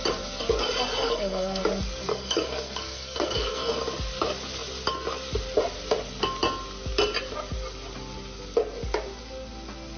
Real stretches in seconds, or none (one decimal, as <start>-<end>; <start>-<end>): 0.0-1.0; 1.6-2.1; 3.7-10.0